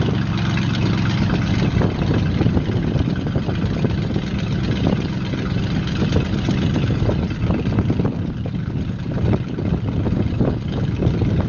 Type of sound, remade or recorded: recorded